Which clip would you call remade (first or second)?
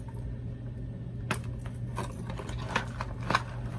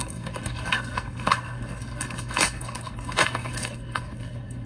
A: second